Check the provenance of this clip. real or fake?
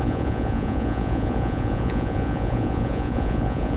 fake